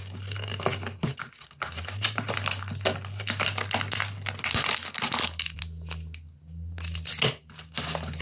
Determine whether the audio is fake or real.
real